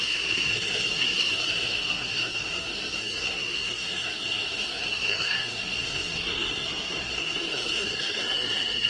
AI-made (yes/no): yes